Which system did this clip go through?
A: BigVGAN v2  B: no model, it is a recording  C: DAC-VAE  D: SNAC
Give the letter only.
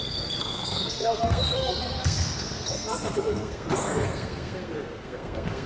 D